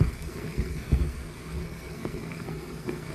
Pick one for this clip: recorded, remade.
remade